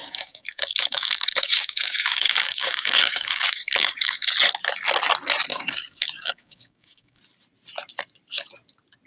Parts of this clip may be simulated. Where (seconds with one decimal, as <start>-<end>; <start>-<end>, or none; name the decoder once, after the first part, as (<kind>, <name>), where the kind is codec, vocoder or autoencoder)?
0.0-4.3 (codec, DAC); 5.5-7.2